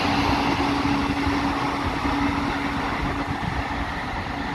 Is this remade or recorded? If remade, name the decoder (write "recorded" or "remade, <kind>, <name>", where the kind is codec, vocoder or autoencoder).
recorded